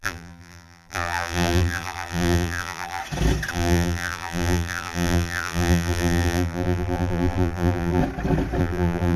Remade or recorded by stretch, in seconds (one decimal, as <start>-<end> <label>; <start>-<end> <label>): 0.0-3.0 remade; 3.0-3.5 recorded; 3.5-8.0 remade; 8.0-8.6 recorded; 8.6-9.2 remade